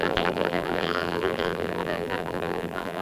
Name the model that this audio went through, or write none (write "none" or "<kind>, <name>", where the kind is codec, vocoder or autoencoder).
vocoder, BigVGAN v2